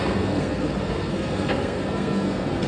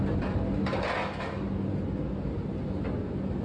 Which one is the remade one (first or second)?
first